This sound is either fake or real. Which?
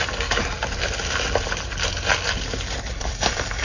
real